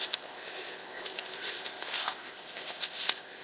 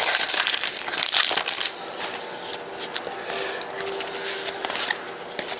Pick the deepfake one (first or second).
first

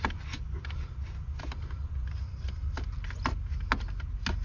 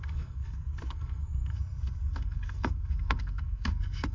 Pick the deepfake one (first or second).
second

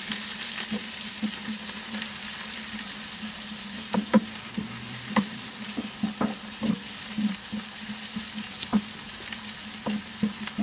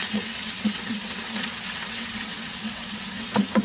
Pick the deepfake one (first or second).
second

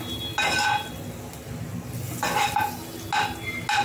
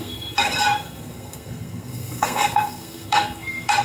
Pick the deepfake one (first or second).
second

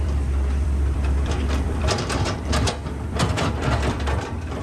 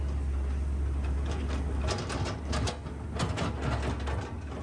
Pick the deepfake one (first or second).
first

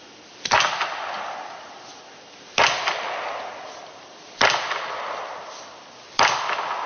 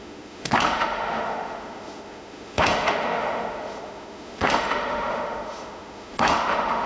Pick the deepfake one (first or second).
second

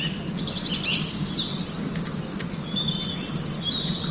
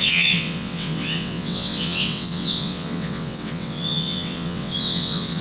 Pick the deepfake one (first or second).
second